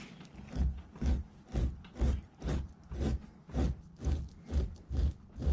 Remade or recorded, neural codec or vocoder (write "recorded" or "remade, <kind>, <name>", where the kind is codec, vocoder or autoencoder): recorded